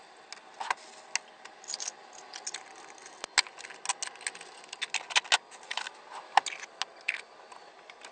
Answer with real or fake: real